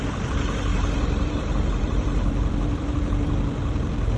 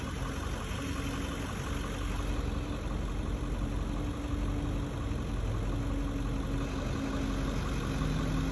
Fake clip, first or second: first